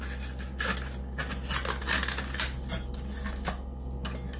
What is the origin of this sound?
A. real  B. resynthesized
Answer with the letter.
A